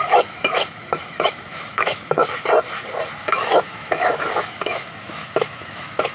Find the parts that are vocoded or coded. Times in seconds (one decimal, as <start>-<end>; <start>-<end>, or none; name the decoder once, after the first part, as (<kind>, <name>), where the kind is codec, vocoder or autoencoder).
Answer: 0.0-2.2 (autoencoder, DAC-VAE); 3.2-6.1